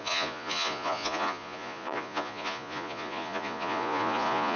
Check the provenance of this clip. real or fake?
fake